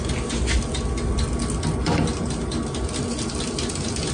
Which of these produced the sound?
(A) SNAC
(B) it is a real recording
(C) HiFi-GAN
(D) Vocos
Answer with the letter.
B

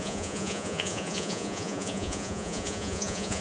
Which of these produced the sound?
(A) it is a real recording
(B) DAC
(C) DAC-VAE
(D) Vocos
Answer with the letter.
D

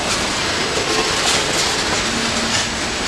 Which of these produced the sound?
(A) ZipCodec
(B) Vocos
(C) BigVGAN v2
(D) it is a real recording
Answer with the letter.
D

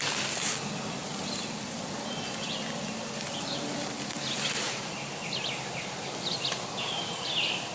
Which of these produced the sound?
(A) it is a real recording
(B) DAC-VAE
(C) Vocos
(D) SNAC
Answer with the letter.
A